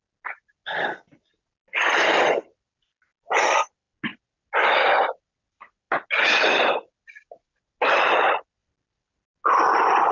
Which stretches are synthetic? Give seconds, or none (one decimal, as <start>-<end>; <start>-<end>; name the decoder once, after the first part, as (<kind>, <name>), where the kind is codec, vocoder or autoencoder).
none